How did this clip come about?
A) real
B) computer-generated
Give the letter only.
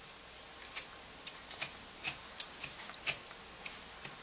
A